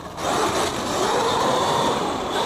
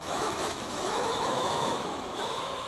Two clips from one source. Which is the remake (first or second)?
second